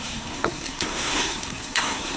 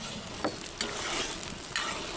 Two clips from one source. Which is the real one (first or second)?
second